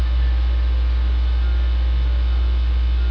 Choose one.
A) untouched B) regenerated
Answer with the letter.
A